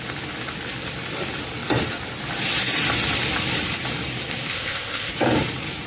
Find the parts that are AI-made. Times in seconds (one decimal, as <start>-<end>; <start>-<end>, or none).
4.5-5.1